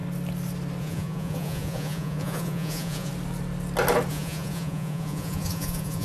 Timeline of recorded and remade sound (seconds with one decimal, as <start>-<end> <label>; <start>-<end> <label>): 0.0-0.8 recorded; 0.8-3.1 remade; 3.1-4.1 recorded; 4.1-6.0 remade